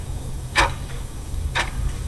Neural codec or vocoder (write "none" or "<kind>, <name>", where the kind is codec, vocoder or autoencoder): codec, DAC